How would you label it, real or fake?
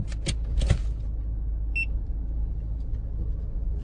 real